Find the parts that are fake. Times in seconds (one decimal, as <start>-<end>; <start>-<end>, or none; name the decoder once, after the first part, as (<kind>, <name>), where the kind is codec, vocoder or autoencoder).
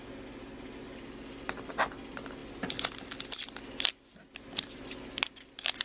none